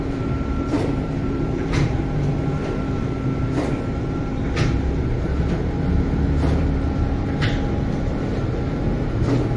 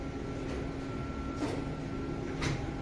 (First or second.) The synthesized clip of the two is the first